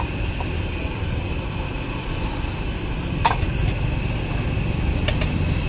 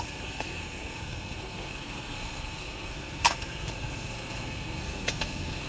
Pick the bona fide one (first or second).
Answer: first